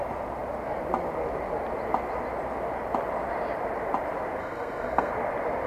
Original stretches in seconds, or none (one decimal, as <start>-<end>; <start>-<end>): 0.0-4.4; 5.1-5.7